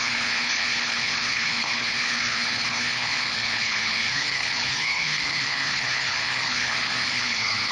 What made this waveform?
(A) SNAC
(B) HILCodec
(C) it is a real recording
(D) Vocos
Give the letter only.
B